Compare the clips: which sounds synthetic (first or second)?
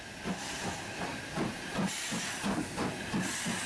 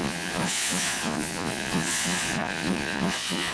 second